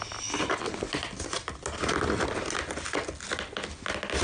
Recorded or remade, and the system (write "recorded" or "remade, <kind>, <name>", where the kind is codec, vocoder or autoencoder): recorded